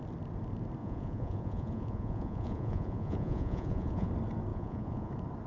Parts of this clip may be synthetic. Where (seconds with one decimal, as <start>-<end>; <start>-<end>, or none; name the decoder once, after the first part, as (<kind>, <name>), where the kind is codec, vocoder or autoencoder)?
0.8-4.1 (vocoder, Vocos); 4.5-5.1